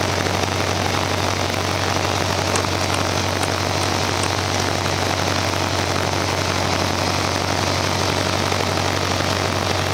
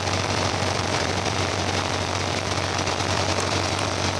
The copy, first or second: second